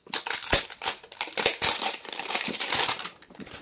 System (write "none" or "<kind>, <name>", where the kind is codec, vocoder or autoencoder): vocoder, BigVGAN v2